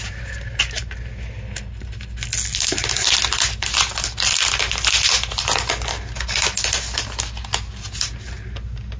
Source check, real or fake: real